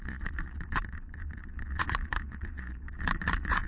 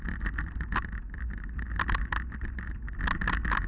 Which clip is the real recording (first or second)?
second